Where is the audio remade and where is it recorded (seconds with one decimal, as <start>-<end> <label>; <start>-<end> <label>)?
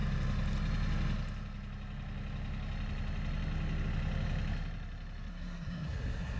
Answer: 0.0-5.3 recorded; 5.3-6.4 remade